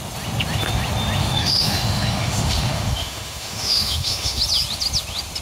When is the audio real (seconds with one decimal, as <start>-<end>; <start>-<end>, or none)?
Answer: 0.0-1.2; 4.4-5.4